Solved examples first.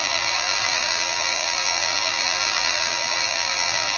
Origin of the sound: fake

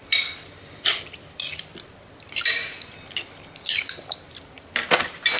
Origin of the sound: fake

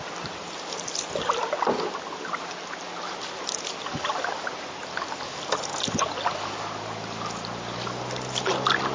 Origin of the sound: real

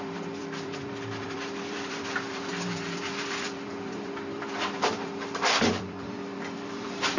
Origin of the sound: fake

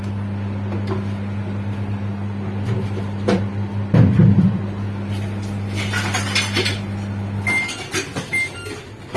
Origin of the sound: real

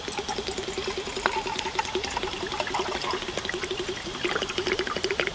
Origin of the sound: real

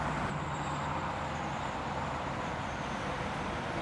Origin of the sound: fake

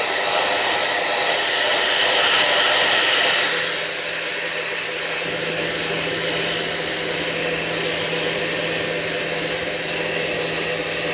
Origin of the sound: fake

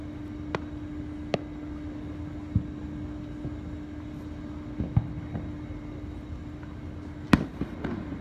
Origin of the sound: real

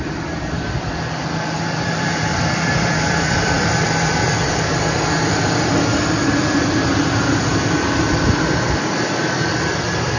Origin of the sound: fake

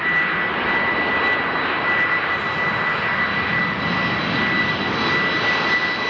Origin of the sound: real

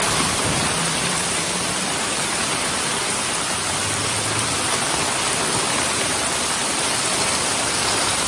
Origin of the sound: fake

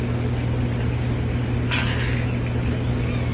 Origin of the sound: real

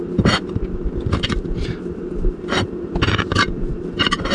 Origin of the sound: fake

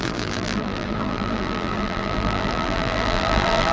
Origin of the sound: fake